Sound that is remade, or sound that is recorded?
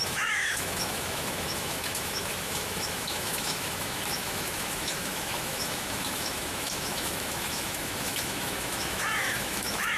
remade